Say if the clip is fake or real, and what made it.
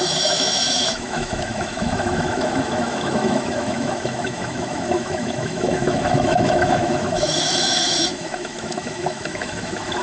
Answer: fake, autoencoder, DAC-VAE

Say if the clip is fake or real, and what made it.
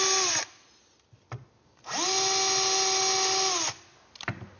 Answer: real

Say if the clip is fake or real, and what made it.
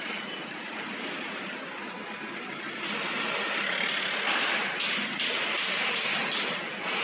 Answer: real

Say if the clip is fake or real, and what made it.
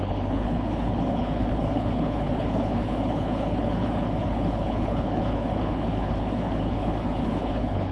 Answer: fake, codec, HILCodec